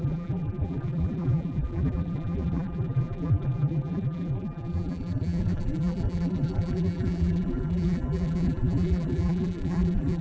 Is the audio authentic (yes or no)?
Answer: no